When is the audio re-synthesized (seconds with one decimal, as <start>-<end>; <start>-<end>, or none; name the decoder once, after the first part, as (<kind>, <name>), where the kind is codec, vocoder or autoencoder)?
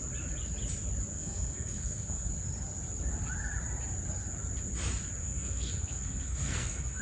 1.1-2.3 (codec, SNAC); 5.2-7.0